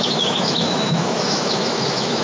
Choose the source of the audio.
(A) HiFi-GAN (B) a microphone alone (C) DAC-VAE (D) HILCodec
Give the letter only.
C